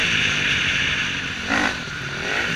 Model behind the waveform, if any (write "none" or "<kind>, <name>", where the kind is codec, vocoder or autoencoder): vocoder, BigVGAN v2